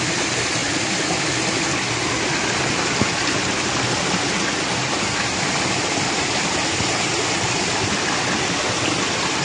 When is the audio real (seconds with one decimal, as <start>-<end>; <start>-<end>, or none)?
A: 0.0-9.4